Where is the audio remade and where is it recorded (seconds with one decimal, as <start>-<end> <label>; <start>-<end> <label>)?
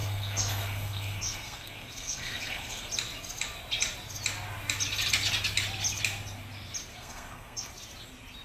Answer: 0.0-2.9 remade; 2.9-6.9 recorded; 6.9-7.7 remade; 7.7-8.4 recorded